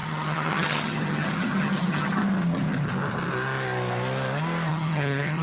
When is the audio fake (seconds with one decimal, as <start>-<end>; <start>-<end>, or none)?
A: 0.0-2.2; 4.7-5.4